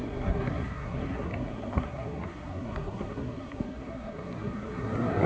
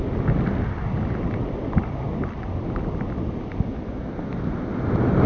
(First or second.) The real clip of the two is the second